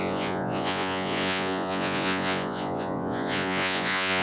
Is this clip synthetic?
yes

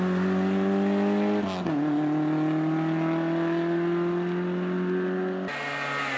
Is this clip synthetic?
no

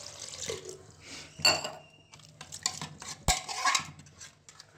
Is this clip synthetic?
no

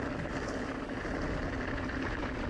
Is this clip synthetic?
no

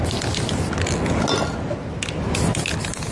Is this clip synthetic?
no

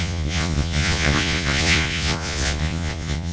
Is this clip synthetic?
yes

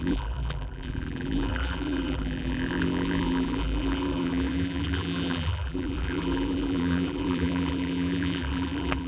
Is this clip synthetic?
yes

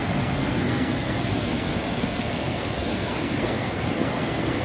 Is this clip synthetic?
yes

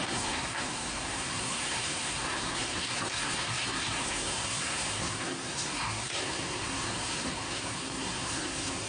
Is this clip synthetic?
yes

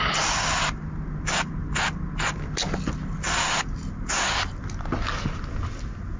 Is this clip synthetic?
no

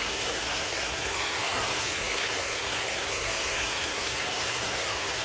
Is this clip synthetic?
yes